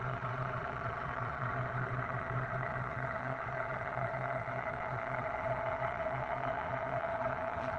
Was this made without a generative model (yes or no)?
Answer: no